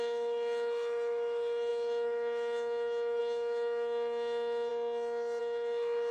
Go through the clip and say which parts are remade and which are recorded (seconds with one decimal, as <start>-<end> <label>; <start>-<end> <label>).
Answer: 0.0-4.7 remade; 4.7-5.4 recorded; 5.4-6.1 remade